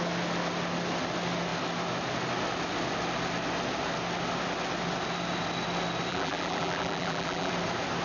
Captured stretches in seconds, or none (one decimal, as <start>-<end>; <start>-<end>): 0.0-6.1; 7.5-8.0